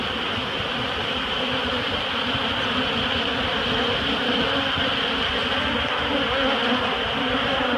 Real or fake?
real